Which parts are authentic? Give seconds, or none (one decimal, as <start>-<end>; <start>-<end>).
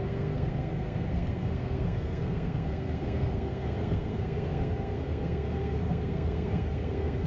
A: none